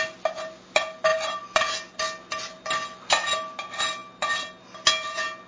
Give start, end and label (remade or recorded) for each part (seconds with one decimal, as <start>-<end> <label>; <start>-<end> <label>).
0.0-5.5 recorded